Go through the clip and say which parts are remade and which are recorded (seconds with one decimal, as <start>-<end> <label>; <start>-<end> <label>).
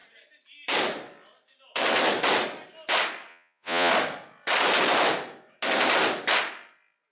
0.0-3.3 recorded; 3.3-3.9 remade; 3.9-7.1 recorded